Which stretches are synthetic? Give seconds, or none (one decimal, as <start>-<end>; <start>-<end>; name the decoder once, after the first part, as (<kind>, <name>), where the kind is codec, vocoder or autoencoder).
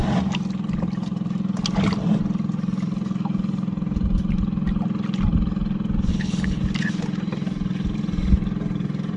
6.1-6.6 (codec, HILCodec)